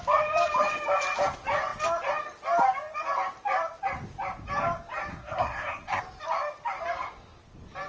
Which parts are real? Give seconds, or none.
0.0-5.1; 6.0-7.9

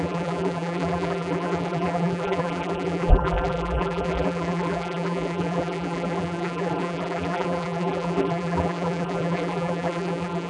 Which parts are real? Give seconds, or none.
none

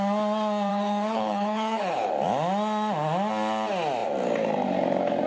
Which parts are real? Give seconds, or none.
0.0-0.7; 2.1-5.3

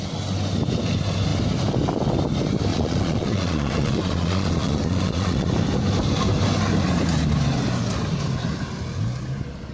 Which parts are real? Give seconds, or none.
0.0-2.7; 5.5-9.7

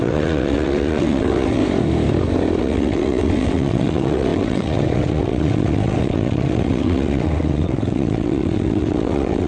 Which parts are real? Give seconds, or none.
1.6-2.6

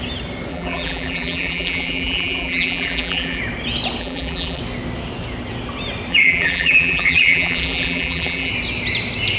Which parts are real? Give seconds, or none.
0.0-0.5; 3.4-4.0; 4.6-6.1; 8.5-9.4

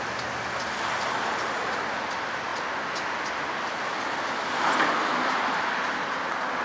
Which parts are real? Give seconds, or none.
0.0-6.6